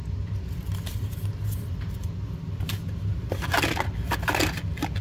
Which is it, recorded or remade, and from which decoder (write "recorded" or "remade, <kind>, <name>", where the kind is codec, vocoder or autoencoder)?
recorded